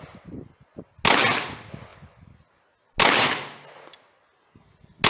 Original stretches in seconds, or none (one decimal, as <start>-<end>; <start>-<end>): 0.0-5.1